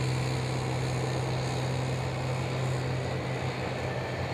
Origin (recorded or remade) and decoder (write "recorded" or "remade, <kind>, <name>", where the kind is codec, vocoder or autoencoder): recorded